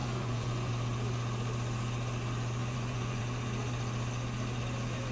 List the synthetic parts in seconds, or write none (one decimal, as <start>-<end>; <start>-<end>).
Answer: 0.0-0.7; 2.6-3.2